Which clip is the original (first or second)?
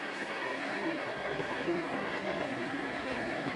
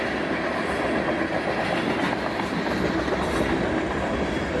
second